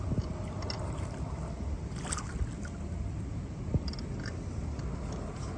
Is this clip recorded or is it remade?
recorded